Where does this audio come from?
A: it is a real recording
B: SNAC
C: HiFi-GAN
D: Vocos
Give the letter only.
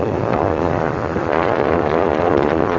D